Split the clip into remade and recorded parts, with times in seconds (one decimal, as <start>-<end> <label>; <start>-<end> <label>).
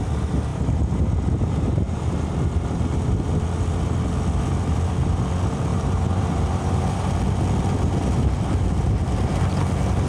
0.0-0.5 recorded; 0.5-2.2 remade; 2.2-5.7 recorded; 5.7-7.1 remade; 7.1-10.1 recorded